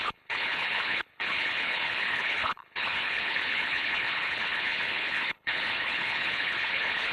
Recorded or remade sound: remade